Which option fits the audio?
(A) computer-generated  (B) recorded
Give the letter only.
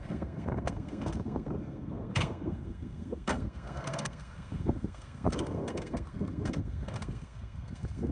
A